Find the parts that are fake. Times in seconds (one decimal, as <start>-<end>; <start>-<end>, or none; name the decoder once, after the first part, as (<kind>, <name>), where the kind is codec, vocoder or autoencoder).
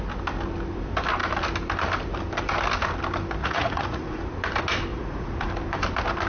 3.4-4.2 (vocoder, Vocos); 4.9-5.5